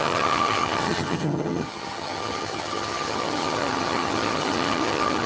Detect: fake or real fake